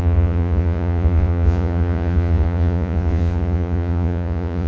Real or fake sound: fake